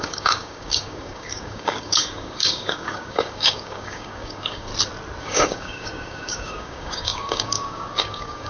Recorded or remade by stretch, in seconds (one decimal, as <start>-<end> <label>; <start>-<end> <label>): 0.0-4.7 remade; 4.7-5.2 recorded; 5.2-8.5 remade